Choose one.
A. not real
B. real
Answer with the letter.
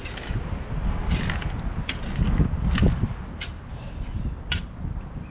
B